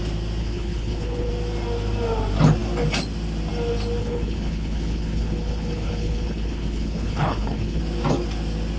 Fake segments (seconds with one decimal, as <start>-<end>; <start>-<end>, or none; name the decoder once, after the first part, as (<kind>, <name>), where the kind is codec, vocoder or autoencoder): 0.4-1.3 (codec, HILCodec); 4.0-7.8